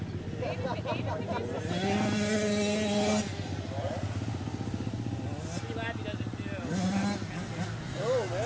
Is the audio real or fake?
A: real